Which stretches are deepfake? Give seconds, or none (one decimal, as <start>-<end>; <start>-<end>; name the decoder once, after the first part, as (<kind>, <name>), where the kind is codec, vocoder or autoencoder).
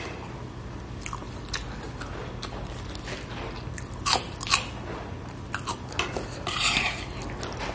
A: 1.2-5.6 (vocoder, BigVGAN v2)